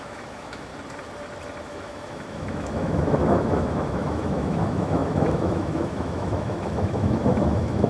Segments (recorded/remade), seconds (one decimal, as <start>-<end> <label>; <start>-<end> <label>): 0.0-0.7 remade; 0.7-1.6 recorded; 1.6-7.9 remade